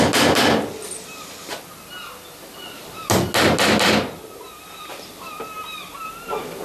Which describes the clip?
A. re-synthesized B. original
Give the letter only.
B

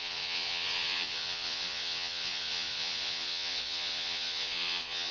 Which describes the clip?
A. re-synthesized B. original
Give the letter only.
A